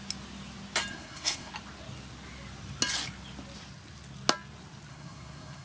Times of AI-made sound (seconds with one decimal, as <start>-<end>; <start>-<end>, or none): 0.9-1.5; 4.9-5.6